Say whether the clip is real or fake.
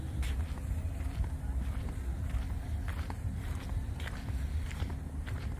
real